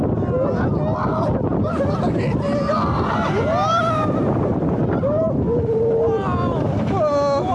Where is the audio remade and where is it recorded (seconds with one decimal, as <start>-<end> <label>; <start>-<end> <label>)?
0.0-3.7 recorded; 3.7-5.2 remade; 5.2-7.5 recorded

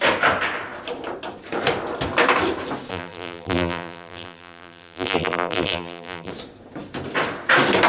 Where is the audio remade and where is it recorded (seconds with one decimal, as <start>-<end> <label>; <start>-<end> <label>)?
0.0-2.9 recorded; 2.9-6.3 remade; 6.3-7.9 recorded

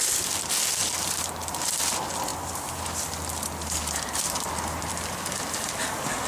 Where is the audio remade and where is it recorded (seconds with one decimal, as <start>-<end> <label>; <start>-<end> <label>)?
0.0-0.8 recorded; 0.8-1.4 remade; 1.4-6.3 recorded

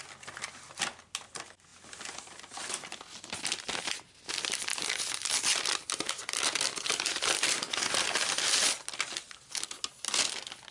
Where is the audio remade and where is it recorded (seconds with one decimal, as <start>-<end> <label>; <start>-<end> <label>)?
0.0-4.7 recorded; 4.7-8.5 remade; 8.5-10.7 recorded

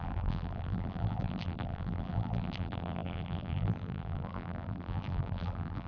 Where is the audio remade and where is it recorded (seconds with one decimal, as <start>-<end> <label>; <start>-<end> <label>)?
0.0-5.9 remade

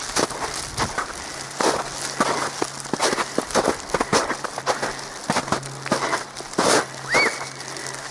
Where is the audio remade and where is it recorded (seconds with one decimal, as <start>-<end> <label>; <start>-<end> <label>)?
0.0-3.0 recorded; 3.0-3.6 remade; 3.6-8.1 recorded

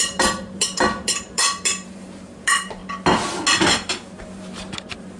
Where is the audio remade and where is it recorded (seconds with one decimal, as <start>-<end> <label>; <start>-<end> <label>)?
0.0-2.8 remade; 2.8-4.2 recorded; 4.2-5.2 remade

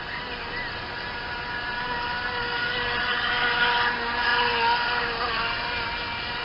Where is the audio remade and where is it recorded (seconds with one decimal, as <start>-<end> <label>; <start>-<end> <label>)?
0.0-6.4 recorded